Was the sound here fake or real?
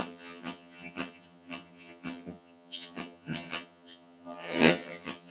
fake